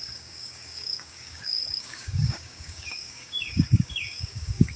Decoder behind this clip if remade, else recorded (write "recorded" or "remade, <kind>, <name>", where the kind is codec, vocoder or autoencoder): remade, codec, DAC